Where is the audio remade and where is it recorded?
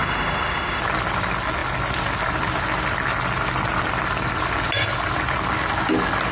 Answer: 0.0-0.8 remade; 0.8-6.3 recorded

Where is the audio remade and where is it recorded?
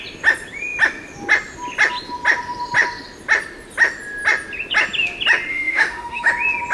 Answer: 0.0-5.5 recorded; 5.5-6.3 remade; 6.3-6.7 recorded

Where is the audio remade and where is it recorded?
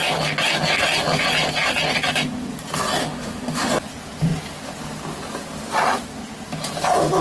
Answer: 0.0-3.0 recorded; 3.0-3.7 remade; 3.7-7.2 recorded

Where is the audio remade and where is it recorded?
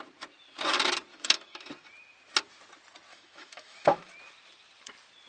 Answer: 0.0-1.1 recorded; 1.1-1.7 remade; 1.7-3.1 recorded; 3.1-4.1 remade; 4.1-5.3 recorded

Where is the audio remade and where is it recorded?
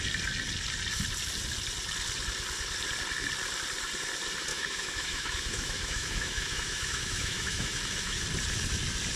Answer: 0.0-4.5 recorded; 4.5-8.2 remade; 8.2-9.2 recorded